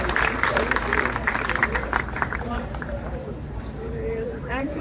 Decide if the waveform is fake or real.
fake